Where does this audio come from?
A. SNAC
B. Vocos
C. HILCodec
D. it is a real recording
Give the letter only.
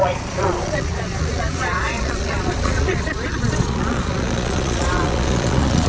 B